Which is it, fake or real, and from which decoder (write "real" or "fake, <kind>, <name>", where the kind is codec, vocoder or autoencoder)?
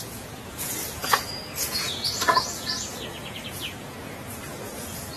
fake, vocoder, Vocos